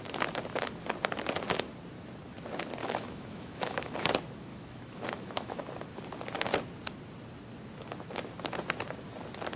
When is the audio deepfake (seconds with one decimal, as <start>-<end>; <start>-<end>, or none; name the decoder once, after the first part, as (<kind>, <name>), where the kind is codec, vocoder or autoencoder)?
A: 2.8-4.1 (autoencoder, DAC-VAE); 4.5-5.6